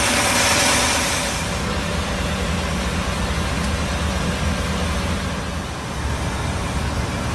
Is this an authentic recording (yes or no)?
yes